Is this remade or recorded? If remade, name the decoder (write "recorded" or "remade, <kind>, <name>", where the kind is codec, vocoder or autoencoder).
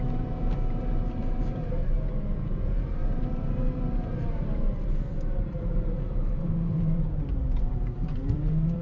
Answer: remade, vocoder, BigVGAN v2